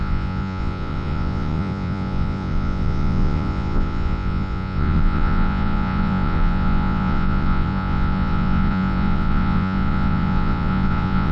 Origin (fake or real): fake